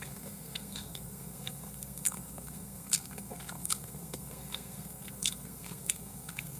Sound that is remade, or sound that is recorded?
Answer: remade